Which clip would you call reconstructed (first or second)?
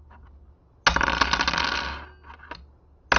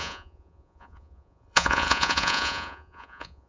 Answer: second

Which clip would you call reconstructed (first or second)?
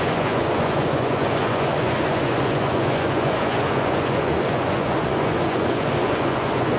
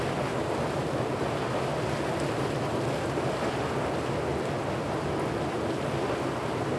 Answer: first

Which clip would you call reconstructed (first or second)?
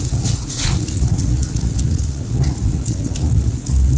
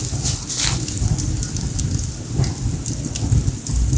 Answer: first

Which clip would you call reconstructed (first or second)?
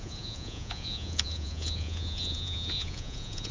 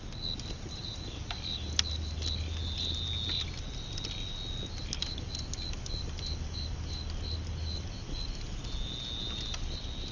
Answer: first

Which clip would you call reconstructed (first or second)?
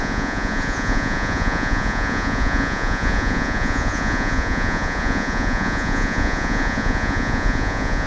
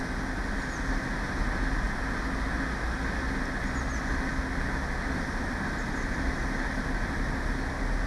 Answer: first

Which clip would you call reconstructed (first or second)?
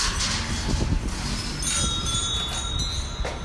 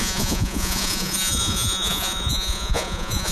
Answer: second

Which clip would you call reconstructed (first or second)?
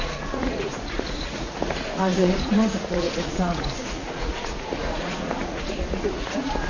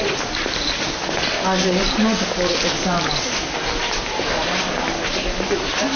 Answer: first